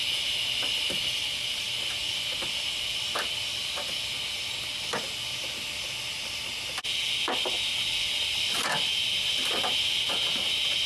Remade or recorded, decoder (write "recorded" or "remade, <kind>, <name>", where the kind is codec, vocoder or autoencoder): recorded